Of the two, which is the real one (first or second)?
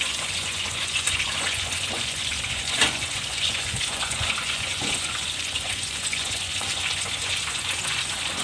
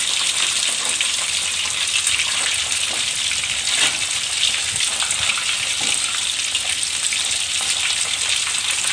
second